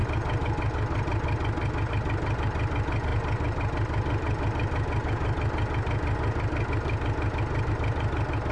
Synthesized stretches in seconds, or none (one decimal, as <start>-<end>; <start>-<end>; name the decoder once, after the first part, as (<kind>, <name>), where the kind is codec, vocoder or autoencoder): none